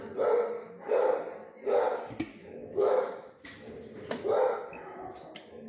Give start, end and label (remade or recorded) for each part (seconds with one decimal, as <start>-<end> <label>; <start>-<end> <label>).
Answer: 0.0-2.3 recorded; 2.3-3.5 remade; 3.5-5.7 recorded